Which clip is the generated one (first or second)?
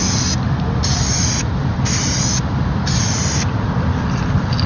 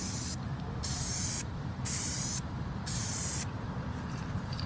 second